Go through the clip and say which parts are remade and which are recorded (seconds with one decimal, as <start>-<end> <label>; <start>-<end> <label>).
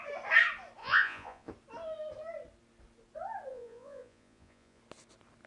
0.0-0.8 recorded; 0.8-1.5 remade; 1.5-3.5 recorded; 3.5-4.8 remade; 4.8-5.5 recorded